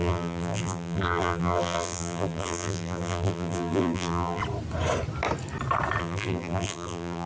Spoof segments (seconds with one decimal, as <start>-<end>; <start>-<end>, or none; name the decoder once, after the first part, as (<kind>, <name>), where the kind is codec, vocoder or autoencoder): 0.0-4.4 (vocoder, BigVGAN v2); 6.0-7.3